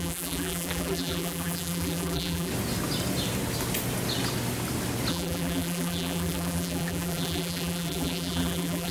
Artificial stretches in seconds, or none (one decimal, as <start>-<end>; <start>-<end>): 0.0-2.5; 5.1-8.9